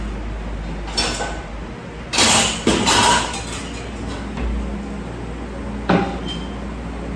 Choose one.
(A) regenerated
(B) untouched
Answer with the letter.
B